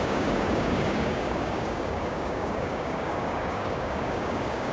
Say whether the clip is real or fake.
fake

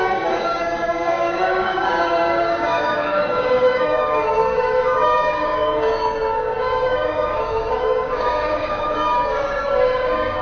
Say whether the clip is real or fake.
fake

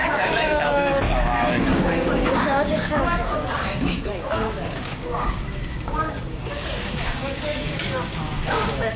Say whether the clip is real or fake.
fake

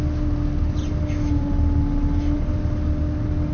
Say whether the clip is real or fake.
real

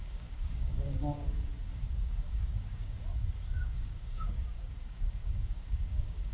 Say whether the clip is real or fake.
fake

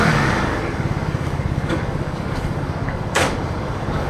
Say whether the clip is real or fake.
fake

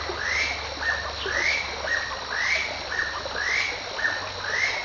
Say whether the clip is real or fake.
real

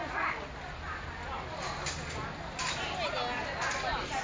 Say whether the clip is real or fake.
real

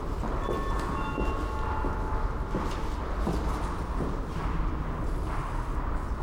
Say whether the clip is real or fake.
real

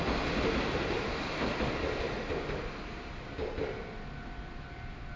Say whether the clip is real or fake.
real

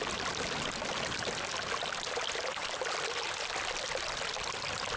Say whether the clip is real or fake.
real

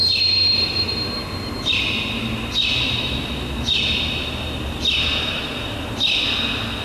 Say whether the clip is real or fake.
real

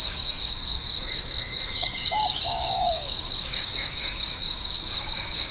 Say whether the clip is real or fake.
fake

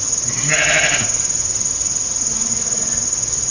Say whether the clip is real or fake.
real